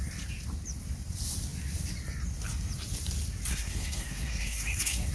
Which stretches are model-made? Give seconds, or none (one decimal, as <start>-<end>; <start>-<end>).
3.5-5.1